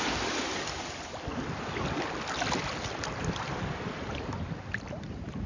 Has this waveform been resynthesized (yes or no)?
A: yes